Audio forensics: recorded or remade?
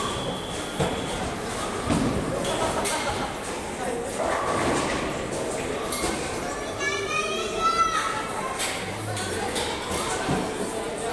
recorded